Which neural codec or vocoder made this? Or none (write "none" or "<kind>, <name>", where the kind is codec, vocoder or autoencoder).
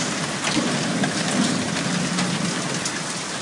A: none